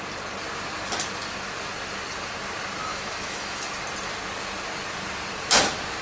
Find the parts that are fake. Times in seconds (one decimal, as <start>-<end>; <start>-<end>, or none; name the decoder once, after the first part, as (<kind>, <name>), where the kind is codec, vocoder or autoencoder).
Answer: 2.9-3.7 (autoencoder, DAC-VAE)